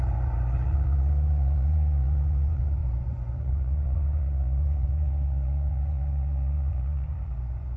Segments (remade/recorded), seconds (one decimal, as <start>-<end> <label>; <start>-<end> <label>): 0.0-7.8 remade